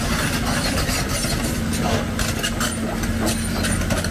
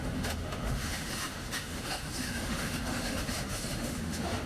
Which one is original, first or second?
first